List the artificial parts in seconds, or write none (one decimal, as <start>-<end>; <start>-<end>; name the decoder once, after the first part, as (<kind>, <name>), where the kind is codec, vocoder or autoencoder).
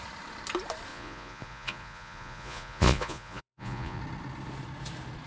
0.9-4.0 (vocoder, Vocos)